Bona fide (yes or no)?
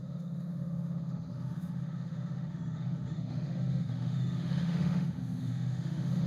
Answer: no